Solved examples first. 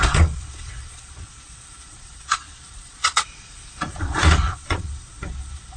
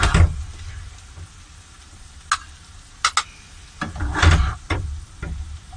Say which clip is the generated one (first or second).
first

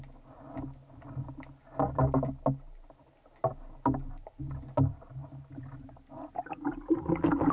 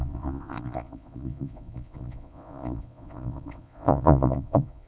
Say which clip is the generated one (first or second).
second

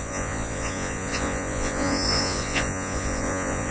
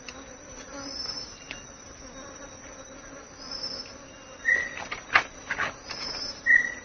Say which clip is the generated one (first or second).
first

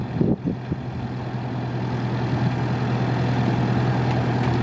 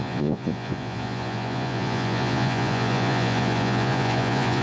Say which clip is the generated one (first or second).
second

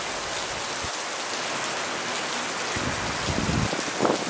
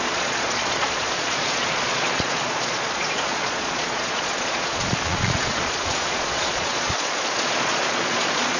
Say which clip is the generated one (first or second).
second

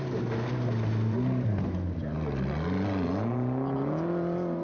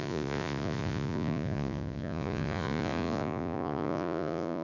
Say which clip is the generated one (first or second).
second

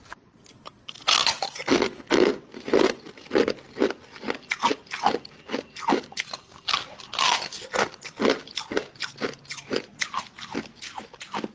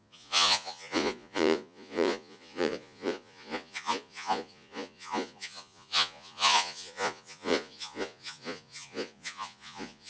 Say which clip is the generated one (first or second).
second